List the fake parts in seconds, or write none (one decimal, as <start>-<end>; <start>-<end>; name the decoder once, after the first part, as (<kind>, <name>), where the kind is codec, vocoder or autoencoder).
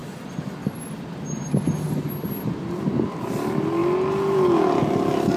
none